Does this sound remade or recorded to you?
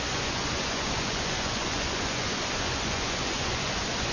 remade